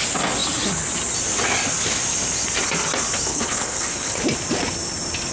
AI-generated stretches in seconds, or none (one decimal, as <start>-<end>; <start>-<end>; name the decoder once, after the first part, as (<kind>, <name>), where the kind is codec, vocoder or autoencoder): 3.3-4.2 (codec, HILCodec)